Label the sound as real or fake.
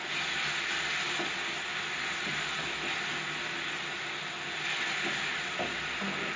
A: real